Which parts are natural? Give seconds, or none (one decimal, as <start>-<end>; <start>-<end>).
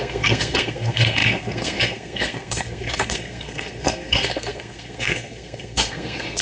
none